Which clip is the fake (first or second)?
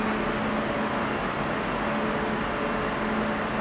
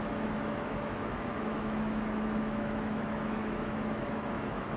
second